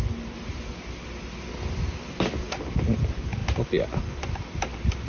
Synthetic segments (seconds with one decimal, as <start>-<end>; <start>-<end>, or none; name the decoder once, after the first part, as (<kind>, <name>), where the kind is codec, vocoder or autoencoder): none